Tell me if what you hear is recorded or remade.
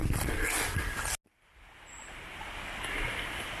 recorded